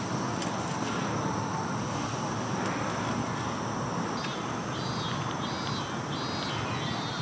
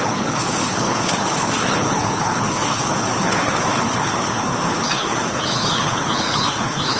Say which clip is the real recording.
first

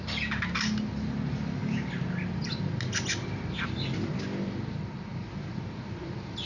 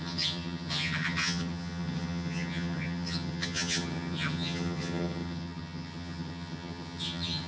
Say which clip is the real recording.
first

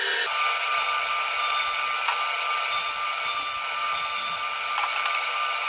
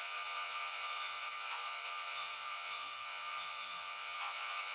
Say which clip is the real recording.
first